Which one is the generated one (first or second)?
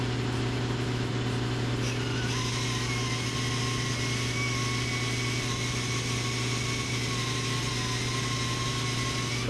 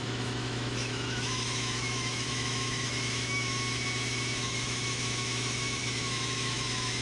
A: second